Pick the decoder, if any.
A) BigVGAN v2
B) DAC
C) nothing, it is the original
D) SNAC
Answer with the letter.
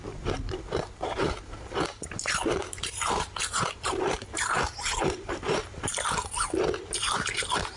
A